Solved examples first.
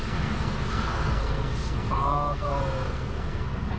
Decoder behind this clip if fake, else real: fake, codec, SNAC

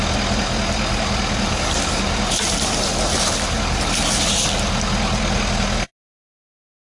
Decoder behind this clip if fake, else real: real